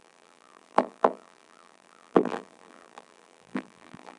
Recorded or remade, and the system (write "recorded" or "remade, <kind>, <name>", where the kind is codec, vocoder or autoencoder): remade, vocoder, BigVGAN v2